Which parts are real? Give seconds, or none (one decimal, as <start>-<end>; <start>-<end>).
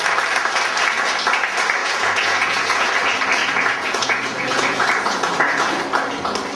0.0-1.8; 2.9-3.4; 5.3-6.6